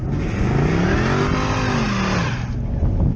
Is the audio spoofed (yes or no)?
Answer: no